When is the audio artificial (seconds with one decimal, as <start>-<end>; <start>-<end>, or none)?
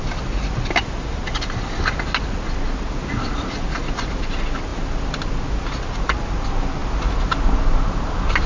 none